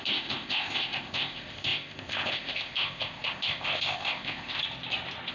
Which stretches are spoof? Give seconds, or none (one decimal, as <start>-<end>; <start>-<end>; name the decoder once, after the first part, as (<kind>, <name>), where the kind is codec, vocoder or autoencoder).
0.0-4.6 (codec, ZipCodec)